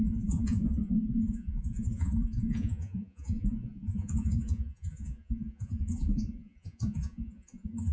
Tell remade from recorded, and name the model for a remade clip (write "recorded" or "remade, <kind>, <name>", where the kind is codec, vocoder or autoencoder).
remade, vocoder, Vocos